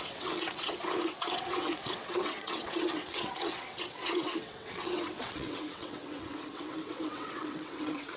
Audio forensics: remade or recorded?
remade